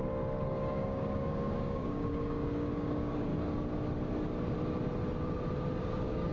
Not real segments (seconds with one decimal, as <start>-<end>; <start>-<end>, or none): 0.0-3.3; 5.8-6.3